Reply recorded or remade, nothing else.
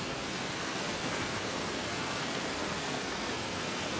remade